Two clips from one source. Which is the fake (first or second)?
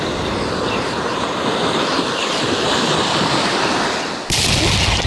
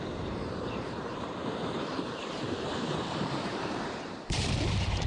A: second